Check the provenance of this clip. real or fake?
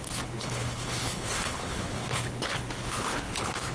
fake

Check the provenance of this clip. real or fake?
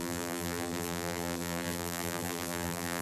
fake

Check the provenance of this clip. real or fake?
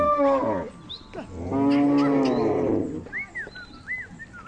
real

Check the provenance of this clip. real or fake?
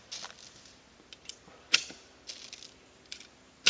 real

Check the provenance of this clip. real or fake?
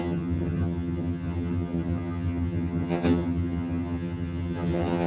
fake